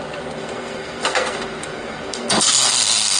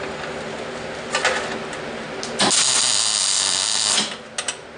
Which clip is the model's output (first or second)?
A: first